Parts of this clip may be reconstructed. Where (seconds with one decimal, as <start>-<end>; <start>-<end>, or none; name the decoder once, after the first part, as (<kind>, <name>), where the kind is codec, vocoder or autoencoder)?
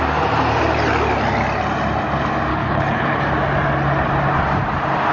2.5-3.2 (codec, HILCodec)